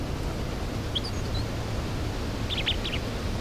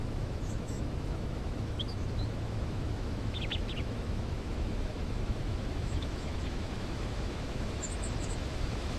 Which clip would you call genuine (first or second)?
first